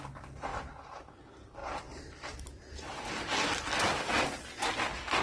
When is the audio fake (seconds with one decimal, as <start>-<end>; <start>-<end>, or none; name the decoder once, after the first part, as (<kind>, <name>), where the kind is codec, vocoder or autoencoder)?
0.5-1.1 (vocoder, BigVGAN v2); 1.6-3.2